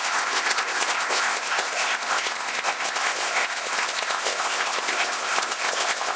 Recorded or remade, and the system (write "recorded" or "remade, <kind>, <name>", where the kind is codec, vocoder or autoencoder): remade, codec, ZipCodec